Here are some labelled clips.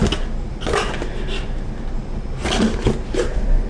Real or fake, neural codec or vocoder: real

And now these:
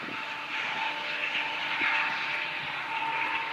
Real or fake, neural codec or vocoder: real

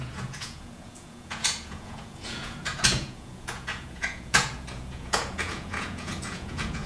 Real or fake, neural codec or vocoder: fake, vocoder, Vocos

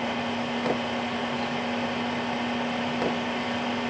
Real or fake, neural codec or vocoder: real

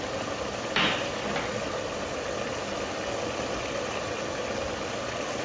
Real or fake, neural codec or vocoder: real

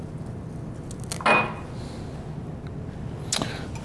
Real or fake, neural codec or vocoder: real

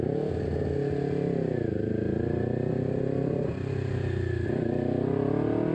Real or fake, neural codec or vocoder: real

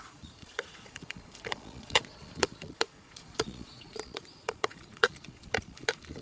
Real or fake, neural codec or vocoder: fake, vocoder, Vocos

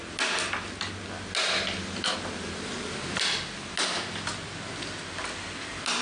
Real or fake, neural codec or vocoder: real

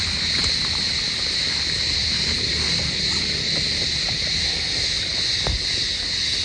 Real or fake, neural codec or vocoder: real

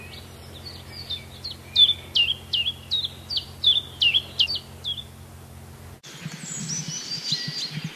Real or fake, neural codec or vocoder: real